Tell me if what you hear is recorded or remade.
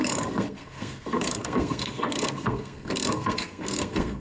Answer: remade